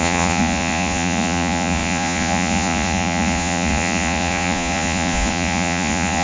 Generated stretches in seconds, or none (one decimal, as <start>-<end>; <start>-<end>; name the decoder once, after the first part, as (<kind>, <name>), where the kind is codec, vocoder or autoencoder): 0.0-6.2 (vocoder, Vocos)